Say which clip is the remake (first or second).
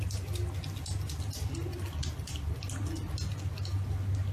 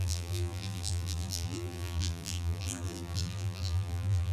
second